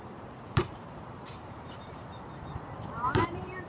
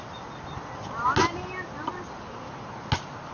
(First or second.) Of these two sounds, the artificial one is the first